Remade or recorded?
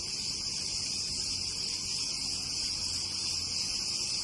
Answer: recorded